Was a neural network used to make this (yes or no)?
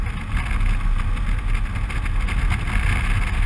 no